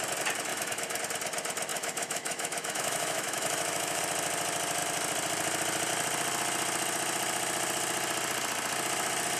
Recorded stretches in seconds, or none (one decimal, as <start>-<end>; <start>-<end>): 0.0-0.5; 1.0-1.7; 4.0-9.4

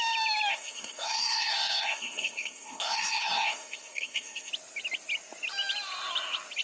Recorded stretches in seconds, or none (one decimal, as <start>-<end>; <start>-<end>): 0.0-0.5; 4.5-6.6

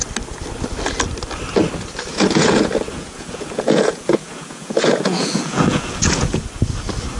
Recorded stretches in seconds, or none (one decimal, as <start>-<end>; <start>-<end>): 0.0-2.1; 6.4-7.2

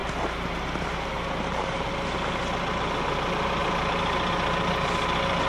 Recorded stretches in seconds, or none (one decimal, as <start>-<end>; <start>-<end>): 1.9-3.6; 4.3-5.5